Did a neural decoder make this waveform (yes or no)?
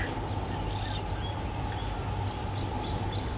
no